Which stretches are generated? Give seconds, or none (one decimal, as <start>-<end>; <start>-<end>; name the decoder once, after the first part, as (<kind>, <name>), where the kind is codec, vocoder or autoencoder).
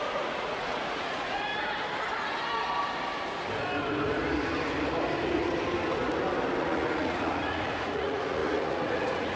0.0-1.5 (vocoder, Vocos); 6.6-9.4